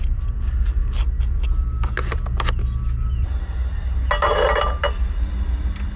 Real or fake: real